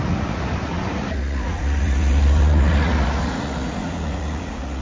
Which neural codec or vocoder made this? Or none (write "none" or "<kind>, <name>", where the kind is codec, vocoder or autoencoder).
vocoder, Vocos